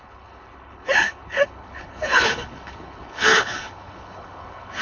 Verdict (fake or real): fake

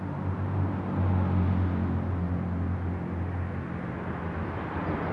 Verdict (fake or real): real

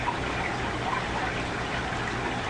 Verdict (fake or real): real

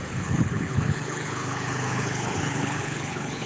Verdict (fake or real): fake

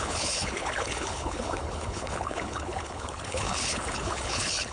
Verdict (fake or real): fake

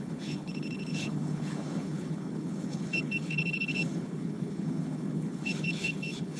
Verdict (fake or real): fake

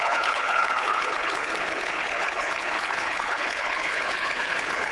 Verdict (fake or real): fake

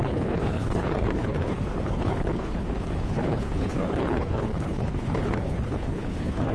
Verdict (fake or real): fake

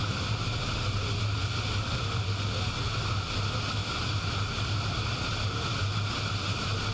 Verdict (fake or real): real